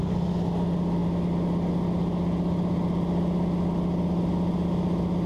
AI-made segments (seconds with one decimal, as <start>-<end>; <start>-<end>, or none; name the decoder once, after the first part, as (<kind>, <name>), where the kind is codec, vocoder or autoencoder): none